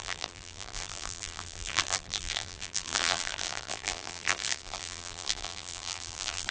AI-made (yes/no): yes